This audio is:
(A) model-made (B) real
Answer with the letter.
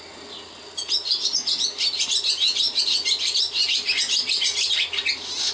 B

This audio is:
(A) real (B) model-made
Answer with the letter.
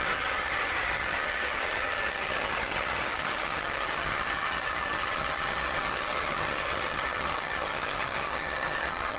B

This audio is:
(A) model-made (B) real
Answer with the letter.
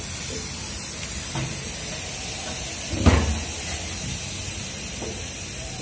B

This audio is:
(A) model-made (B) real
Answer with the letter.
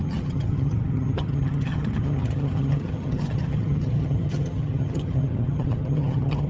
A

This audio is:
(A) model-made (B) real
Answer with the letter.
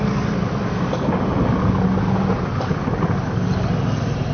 B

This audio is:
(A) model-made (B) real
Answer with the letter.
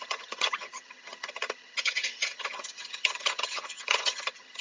A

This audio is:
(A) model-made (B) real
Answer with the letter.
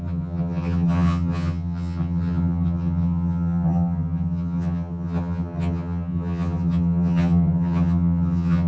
A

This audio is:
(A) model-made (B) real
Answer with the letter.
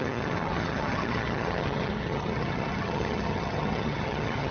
A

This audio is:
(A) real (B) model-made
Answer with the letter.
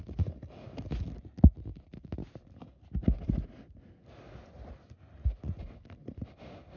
A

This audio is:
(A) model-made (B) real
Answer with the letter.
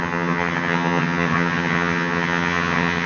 A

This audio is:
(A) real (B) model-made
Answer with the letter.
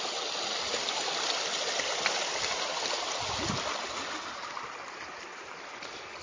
A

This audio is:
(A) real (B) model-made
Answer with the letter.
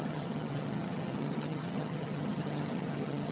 B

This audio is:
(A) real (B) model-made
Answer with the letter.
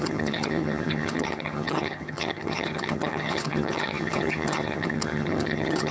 B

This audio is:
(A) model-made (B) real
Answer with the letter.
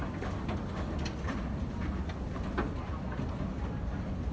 B